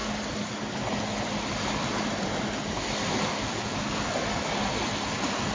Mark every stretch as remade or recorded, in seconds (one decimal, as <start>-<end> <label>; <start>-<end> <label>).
0.0-5.5 recorded